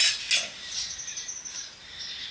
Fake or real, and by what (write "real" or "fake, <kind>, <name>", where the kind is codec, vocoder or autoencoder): real